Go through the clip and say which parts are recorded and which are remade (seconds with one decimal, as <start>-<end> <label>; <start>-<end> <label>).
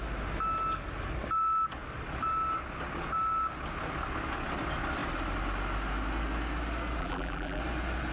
0.0-7.0 recorded; 7.0-7.6 remade; 7.6-8.1 recorded